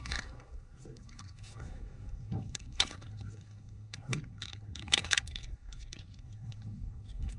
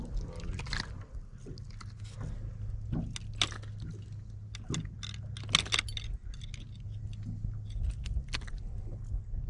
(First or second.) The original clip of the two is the second